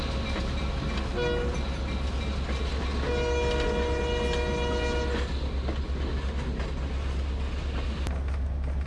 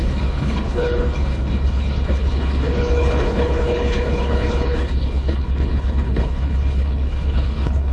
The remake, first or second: second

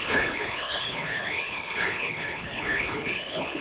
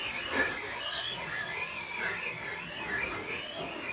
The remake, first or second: first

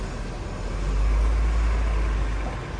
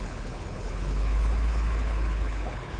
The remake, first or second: second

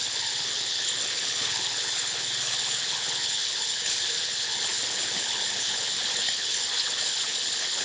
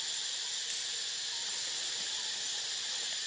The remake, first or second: first